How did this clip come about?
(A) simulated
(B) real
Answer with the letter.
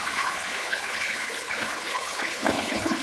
A